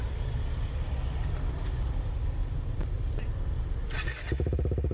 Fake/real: real